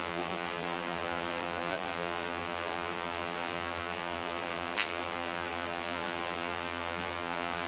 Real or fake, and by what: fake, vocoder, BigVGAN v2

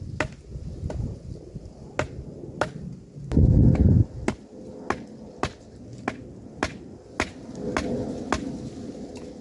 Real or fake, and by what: real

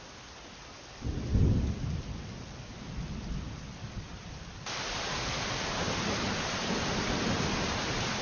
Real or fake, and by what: real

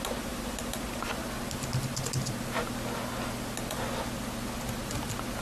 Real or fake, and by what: real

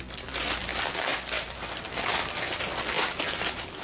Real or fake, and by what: real